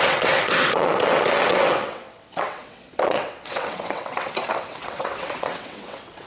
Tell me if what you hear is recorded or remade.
remade